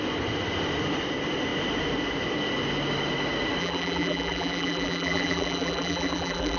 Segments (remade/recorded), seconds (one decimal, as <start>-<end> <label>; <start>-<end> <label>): 0.0-3.6 recorded; 3.6-6.6 remade